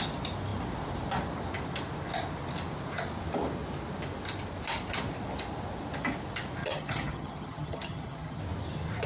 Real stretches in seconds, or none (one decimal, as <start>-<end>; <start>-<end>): 0.0-6.6; 8.4-9.1